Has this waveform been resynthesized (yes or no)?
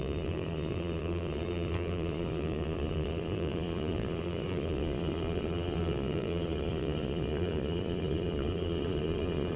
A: yes